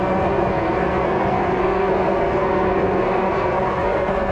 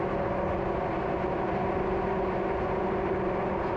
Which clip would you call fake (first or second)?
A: first